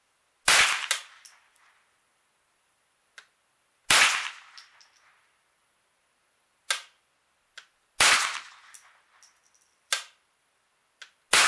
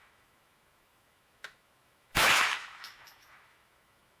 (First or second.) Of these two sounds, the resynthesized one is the second